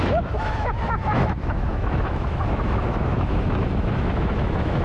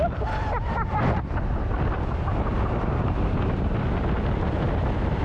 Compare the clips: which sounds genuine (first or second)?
second